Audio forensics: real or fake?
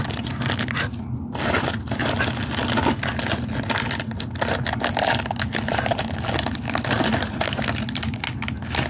real